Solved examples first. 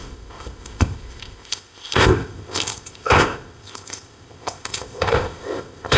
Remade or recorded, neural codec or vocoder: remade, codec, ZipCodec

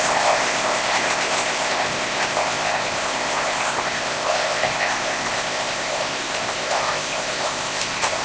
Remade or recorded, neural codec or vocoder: remade, codec, ZipCodec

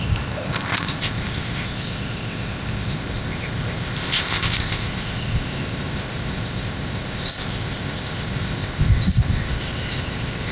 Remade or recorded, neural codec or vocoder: remade, codec, ZipCodec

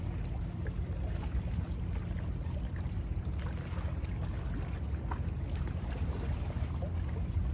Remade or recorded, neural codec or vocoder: recorded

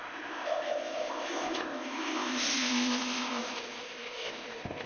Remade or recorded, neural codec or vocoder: remade, codec, ZipCodec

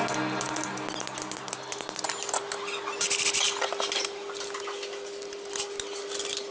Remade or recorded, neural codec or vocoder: recorded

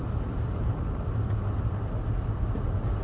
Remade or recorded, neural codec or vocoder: recorded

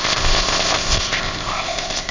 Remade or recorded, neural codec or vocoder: remade, codec, ZipCodec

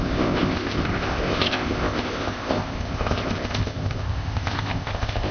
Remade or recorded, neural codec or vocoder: remade, codec, ZipCodec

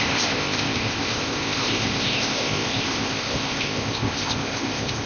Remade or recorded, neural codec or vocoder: remade, codec, ZipCodec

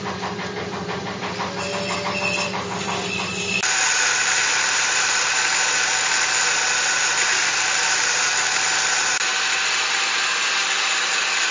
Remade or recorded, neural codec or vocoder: recorded